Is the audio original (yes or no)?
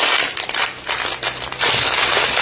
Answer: yes